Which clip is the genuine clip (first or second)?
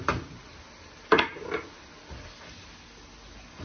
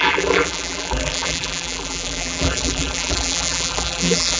first